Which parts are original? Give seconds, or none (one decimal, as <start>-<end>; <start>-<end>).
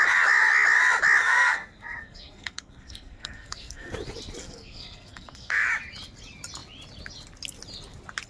0.0-1.2; 3.9-4.4; 5.7-8.3